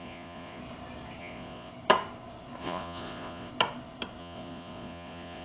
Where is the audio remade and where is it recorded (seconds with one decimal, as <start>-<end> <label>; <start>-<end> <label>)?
0.0-0.6 remade; 0.6-1.2 recorded; 1.2-1.7 remade; 1.7-2.6 recorded; 2.6-3.5 remade; 3.5-4.2 recorded; 4.2-5.4 remade